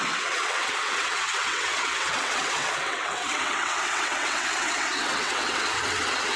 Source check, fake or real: fake